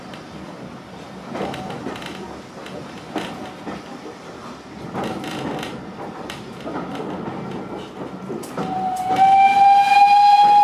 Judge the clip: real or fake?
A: real